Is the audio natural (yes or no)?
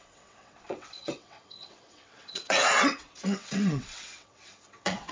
no